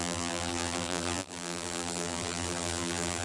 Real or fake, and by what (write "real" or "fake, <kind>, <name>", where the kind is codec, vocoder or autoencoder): fake, vocoder, BigVGAN v2